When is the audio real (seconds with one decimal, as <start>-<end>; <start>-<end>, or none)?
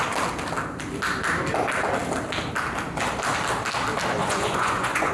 0.0-4.2